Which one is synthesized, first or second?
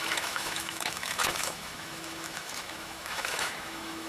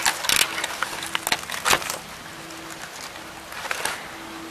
first